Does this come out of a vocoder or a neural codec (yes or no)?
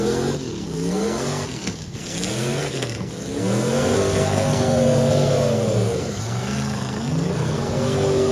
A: yes